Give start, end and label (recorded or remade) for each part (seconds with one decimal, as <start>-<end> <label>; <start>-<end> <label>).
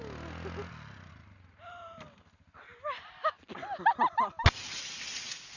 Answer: 0.0-5.6 recorded